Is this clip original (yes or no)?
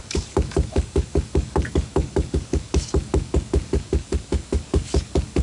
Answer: no